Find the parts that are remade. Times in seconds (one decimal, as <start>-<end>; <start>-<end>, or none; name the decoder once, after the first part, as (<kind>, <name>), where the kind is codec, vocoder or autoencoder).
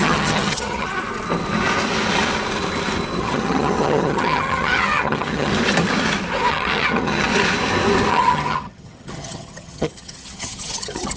0.0-0.9 (vocoder, HiFi-GAN); 3.2-5.5; 6.5-7.3; 8.1-11.2